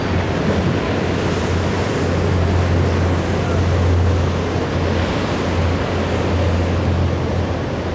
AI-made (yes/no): no